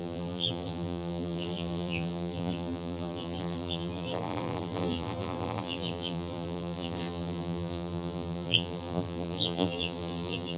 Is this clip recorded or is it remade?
remade